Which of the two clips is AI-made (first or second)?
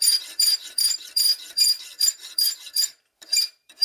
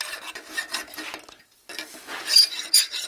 first